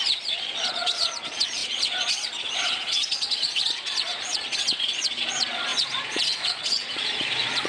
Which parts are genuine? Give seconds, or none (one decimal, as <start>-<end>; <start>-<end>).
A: none